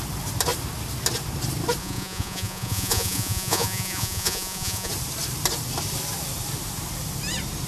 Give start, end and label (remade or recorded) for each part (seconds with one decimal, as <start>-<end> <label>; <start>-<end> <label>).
0.0-1.8 recorded; 1.8-4.9 remade; 4.9-7.7 recorded